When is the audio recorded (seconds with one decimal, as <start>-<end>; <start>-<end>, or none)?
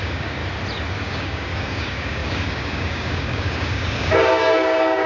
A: 0.4-0.9